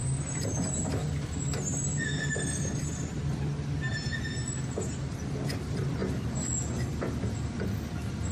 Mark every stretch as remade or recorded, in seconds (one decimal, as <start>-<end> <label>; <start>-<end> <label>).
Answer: 0.0-8.3 recorded